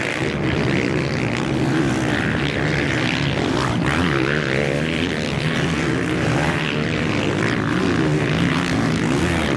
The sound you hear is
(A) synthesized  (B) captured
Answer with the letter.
B